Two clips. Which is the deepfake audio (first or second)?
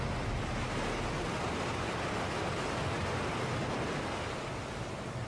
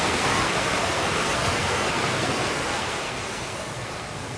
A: second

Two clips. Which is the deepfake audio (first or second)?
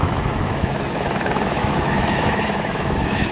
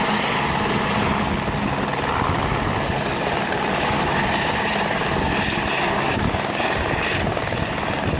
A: first